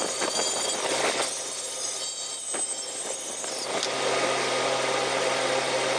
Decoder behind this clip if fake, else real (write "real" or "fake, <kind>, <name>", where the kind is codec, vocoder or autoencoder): real